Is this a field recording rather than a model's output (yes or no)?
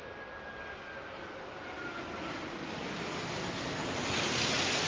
yes